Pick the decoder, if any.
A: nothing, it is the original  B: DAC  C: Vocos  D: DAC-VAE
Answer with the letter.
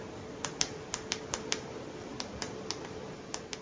A